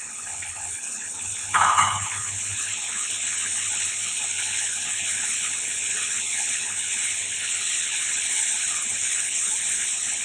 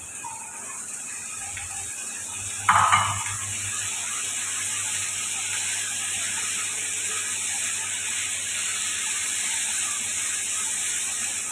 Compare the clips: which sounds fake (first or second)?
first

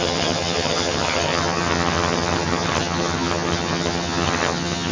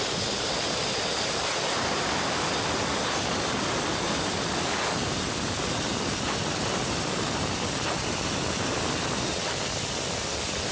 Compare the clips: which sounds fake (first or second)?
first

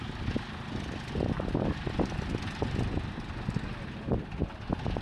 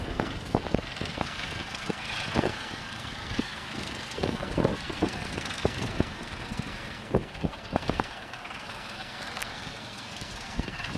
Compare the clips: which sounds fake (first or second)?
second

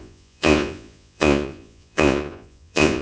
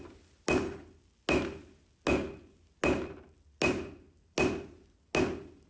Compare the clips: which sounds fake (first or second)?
first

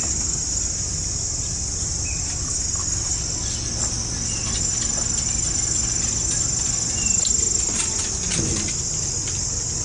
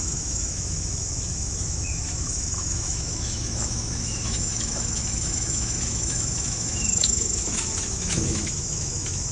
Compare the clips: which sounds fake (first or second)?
second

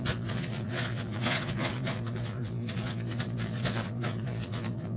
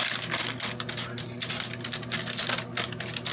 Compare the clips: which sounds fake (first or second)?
first